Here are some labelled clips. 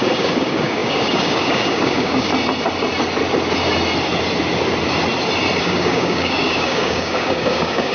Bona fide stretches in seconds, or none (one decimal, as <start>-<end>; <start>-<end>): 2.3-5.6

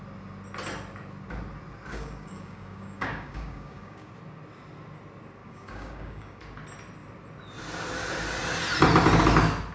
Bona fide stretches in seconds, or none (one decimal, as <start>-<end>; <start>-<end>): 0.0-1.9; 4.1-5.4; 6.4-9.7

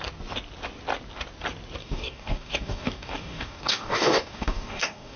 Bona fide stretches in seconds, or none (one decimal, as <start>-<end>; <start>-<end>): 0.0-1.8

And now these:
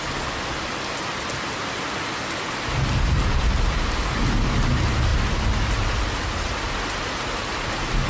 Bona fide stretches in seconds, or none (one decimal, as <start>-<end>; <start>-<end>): 0.0-8.1

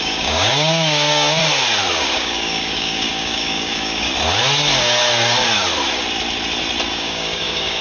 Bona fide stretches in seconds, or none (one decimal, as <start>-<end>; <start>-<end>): 1.4-2.0; 4.1-6.9